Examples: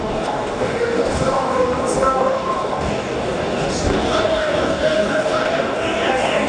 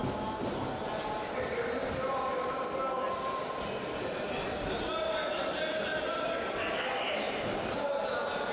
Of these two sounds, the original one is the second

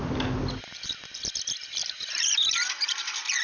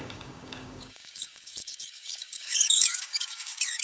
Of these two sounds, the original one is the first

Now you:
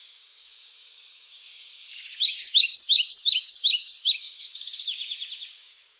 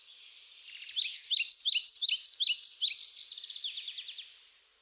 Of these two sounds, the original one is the second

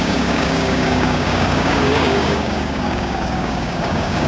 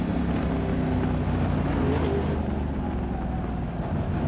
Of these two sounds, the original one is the second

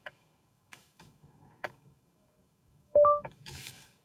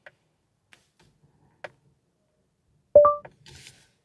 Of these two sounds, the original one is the second